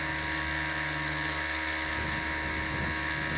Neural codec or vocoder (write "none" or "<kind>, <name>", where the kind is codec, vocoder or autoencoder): none